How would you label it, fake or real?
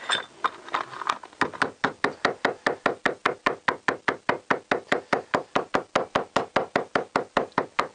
real